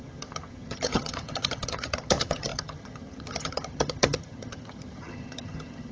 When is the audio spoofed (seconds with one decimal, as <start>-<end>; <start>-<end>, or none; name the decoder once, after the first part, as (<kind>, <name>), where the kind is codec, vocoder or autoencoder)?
0.0-5.9 (vocoder, HiFi-GAN)